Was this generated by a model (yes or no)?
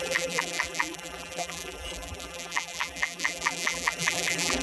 yes